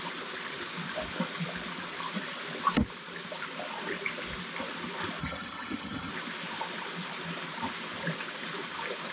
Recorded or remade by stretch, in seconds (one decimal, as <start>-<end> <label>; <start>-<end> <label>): 0.0-5.2 recorded; 5.2-6.1 remade; 6.1-9.1 recorded